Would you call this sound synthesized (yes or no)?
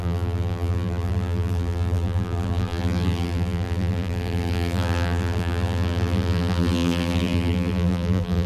yes